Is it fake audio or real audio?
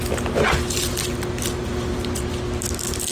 real